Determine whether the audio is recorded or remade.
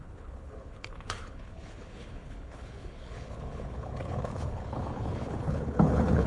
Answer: remade